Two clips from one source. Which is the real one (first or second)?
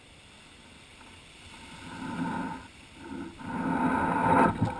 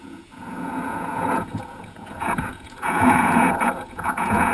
first